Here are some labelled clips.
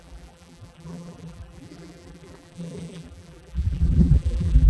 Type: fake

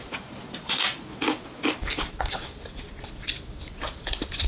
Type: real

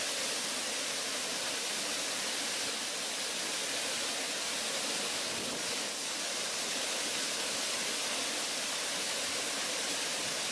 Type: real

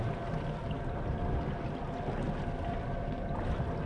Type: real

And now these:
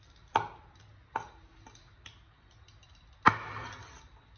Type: real